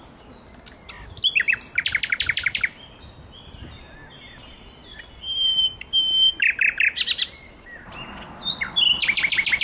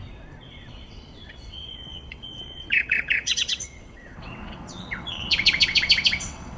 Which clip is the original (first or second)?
first